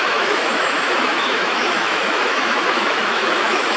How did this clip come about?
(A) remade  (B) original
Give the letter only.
A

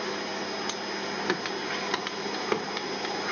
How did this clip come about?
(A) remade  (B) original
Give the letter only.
B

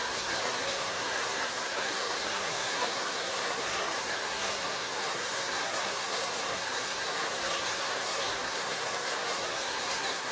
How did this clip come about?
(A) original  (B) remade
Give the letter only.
B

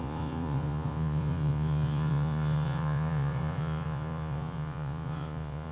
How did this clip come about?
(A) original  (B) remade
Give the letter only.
B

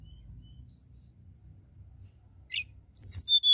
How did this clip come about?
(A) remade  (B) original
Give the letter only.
B